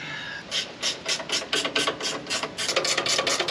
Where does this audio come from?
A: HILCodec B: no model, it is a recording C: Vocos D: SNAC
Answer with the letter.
B